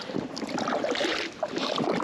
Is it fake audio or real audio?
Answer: real